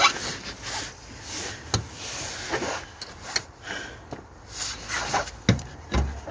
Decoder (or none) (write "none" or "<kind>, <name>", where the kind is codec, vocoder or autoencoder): none